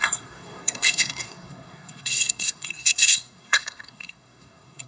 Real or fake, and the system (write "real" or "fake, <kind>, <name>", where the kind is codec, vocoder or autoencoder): fake, codec, SNAC